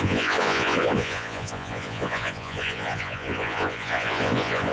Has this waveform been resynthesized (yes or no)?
yes